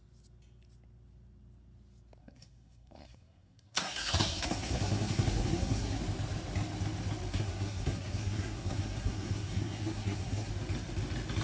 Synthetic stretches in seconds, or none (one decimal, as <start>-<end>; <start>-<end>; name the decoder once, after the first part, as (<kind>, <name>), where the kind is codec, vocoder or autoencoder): 2.2-6.0 (codec, SNAC); 7.3-10.5